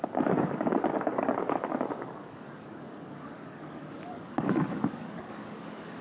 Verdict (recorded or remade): remade